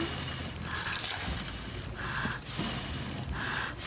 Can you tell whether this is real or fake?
real